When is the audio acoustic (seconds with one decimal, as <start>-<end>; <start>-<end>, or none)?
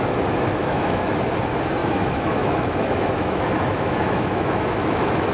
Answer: 0.0-0.6; 1.2-1.8